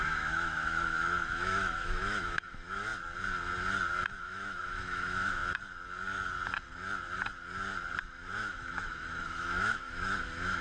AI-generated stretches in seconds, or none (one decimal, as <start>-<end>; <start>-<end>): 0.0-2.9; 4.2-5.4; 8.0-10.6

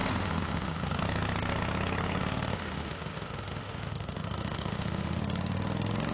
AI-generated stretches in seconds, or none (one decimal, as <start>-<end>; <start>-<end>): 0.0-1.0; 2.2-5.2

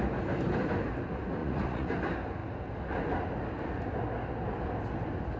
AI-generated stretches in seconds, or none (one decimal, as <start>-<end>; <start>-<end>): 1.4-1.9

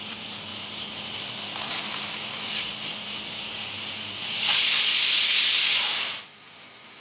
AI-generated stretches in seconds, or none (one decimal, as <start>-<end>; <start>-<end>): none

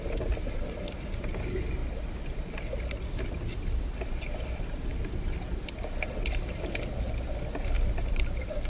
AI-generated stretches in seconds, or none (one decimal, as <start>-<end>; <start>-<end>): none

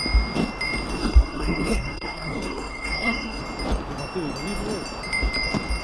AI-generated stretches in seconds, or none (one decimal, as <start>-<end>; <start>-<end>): 1.0-3.4